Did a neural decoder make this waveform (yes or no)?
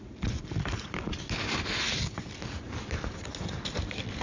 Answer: no